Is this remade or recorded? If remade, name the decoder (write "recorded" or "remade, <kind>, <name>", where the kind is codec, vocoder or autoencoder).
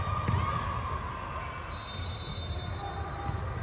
recorded